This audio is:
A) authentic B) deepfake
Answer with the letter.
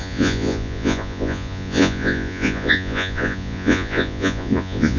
B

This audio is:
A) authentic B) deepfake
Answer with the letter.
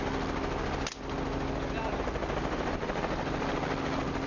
A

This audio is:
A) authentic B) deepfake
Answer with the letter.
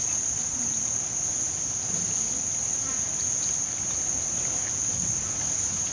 A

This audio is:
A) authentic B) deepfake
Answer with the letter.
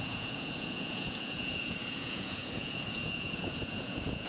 B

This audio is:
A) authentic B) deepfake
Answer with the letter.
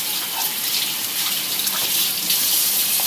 A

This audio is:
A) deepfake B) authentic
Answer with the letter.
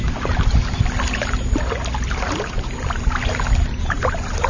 B